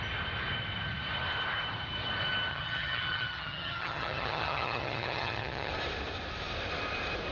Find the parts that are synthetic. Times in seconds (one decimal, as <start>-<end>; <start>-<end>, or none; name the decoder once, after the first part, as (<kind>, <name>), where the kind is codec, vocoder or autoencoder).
2.5-5.7 (vocoder, HiFi-GAN)